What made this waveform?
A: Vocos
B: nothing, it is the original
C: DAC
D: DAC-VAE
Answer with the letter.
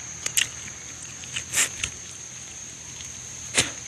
B